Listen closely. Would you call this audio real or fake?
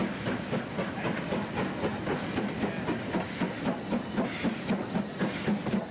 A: real